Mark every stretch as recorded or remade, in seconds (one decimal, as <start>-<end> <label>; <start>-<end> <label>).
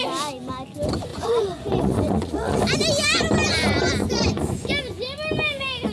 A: 0.0-1.1 recorded; 1.1-2.6 remade; 2.6-4.0 recorded; 4.0-4.7 remade; 4.7-5.9 recorded